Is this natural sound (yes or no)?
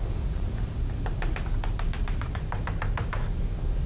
yes